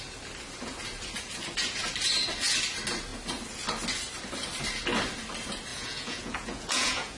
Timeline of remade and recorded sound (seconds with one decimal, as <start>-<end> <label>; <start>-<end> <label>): 0.0-5.7 recorded; 5.7-7.2 remade

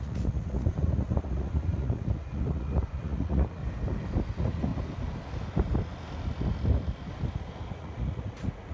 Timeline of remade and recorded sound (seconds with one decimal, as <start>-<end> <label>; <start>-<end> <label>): 0.0-3.6 remade; 3.6-4.3 recorded; 4.3-4.7 remade; 4.7-7.7 recorded; 7.7-8.7 remade